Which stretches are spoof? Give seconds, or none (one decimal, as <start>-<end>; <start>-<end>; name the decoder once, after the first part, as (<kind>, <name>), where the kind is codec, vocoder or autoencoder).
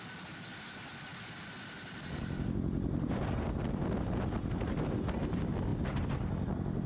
none